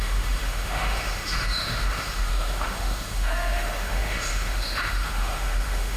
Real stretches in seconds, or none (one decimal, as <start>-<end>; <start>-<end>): none